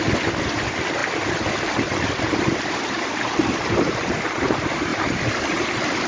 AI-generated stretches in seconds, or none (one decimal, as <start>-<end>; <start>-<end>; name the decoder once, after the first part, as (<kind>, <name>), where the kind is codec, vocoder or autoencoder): none